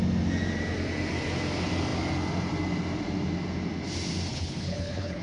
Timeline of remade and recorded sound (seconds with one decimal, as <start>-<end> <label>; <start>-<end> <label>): 0.0-4.3 recorded; 4.3-5.2 remade